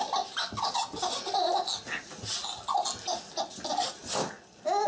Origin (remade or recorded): recorded